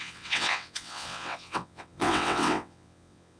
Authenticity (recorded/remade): remade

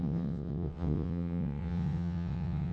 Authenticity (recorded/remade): remade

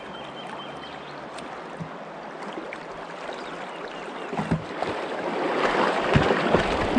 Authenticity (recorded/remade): recorded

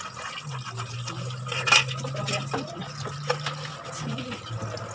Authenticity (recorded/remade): recorded